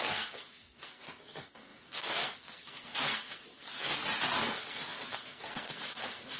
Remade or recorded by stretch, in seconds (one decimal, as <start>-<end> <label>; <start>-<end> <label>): 0.0-3.9 remade; 3.9-4.4 recorded; 4.4-6.4 remade